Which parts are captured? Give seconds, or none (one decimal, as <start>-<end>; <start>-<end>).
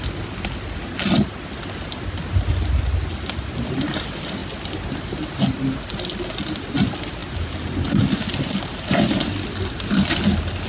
0.0-10.7